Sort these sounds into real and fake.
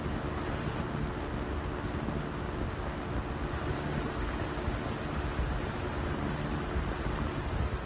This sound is real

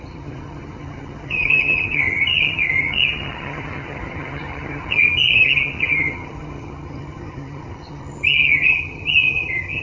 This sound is fake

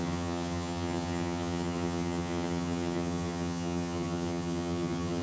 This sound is fake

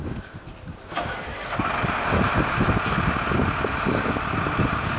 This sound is real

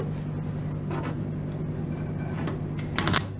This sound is real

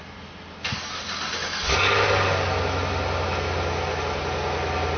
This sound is real